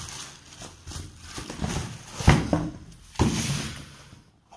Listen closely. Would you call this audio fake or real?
real